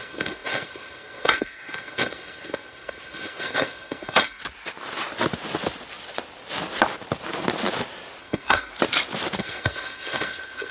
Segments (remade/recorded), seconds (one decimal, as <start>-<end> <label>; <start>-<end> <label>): 0.0-4.4 remade; 4.4-8.2 recorded; 8.2-8.7 remade; 8.7-9.4 recorded; 9.4-10.7 remade